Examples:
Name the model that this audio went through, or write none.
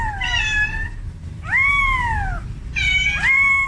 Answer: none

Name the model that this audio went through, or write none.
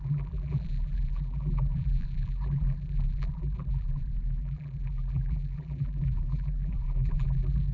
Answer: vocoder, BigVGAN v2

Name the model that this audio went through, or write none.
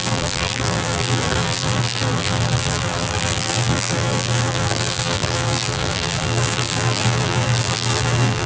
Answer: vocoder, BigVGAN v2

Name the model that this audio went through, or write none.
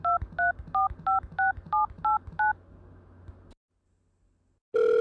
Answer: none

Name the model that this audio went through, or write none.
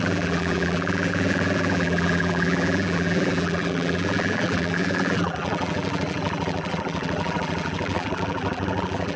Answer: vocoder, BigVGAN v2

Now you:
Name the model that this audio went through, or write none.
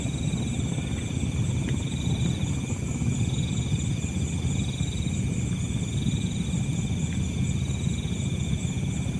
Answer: none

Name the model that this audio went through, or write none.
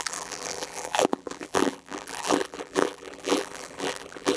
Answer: vocoder, BigVGAN v2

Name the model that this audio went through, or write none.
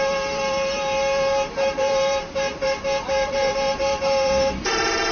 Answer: vocoder, BigVGAN v2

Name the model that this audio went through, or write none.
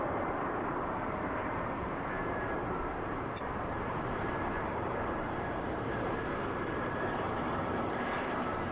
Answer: vocoder, BigVGAN v2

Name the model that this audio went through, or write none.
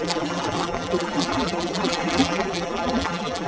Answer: vocoder, BigVGAN v2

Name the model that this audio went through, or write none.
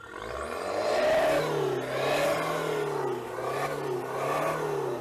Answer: none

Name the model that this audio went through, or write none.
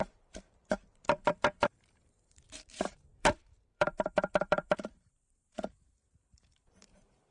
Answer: vocoder, BigVGAN v2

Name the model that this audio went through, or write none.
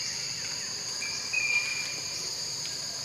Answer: none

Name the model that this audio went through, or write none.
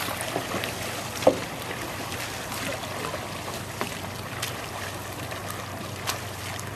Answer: none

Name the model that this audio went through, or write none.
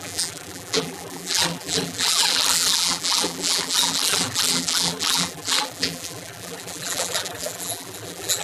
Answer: vocoder, BigVGAN v2